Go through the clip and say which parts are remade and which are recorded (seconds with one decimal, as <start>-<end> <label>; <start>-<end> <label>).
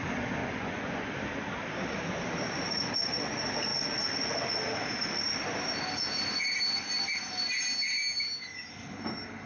0.0-0.4 recorded; 0.4-1.1 remade; 1.1-9.5 recorded